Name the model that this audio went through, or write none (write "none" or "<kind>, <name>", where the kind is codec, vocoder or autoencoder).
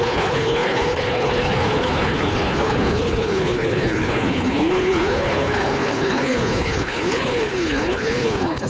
codec, HILCodec